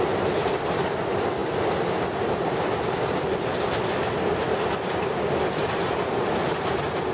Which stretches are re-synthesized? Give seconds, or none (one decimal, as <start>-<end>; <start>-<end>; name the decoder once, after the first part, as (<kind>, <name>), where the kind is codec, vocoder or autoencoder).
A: none